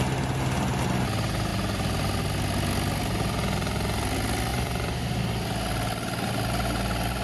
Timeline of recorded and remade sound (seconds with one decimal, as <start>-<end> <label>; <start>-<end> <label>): 0.0-4.5 recorded; 4.5-5.3 remade; 5.3-7.2 recorded